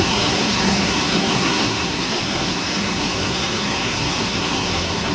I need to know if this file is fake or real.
fake